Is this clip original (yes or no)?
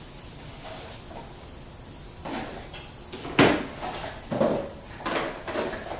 yes